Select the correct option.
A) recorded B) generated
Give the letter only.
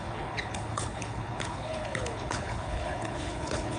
B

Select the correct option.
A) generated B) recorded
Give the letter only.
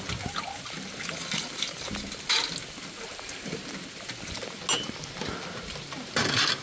B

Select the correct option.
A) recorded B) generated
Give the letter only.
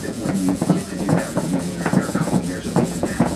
B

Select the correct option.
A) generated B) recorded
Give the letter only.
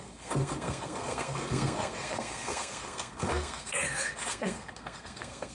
A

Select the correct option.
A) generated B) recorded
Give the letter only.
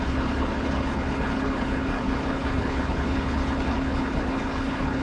A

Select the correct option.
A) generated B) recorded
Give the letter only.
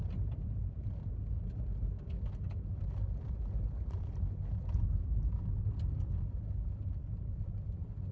B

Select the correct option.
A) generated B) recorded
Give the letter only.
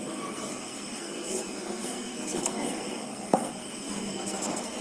A